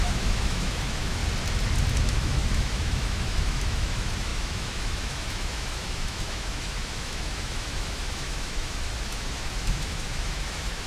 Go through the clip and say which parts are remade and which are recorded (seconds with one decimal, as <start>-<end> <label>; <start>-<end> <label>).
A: 0.0-1.2 remade; 1.2-2.0 recorded; 2.0-10.9 remade